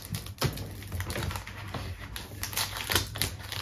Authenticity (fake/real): real